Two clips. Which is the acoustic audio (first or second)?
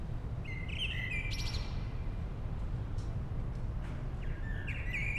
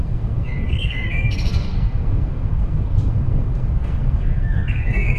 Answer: first